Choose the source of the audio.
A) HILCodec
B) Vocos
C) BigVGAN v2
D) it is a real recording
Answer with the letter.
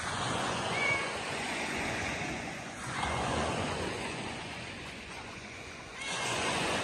B